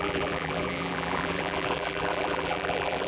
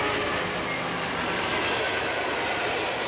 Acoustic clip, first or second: second